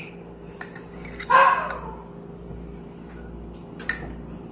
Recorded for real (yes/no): yes